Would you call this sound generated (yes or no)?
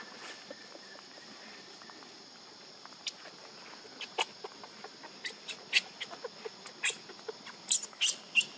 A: no